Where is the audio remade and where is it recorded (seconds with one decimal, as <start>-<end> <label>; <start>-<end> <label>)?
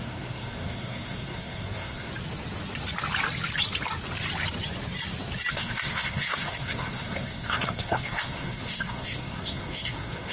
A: 0.0-2.1 remade; 2.1-5.5 recorded; 5.5-10.3 remade